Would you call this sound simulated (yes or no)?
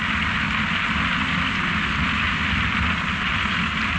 no